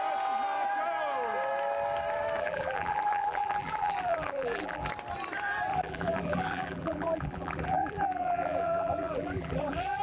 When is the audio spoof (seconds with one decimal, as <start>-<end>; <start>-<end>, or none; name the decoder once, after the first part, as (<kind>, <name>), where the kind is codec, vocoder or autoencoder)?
2.4-4.9 (vocoder, BigVGAN v2); 5.7-10.0